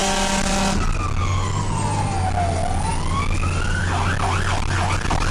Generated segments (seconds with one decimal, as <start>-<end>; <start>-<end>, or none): none

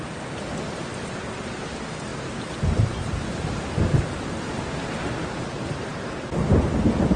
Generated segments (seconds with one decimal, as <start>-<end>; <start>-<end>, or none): none

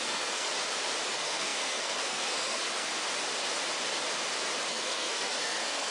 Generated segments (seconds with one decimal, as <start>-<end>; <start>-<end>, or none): 0.0-0.5; 1.1-2.9; 4.7-5.9

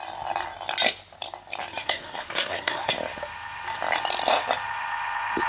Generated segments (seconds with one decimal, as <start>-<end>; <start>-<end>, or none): 1.8-2.9

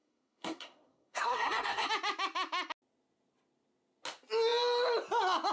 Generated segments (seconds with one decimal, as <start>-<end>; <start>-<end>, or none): 0.0-1.9

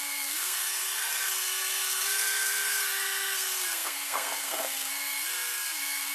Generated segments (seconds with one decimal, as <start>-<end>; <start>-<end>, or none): 0.0-6.1

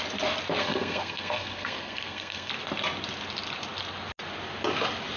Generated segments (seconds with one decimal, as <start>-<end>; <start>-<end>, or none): 0.6-2.5

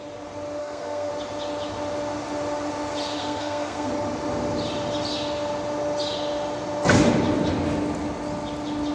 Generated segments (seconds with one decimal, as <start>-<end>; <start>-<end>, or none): 0.6-1.1; 3.2-3.9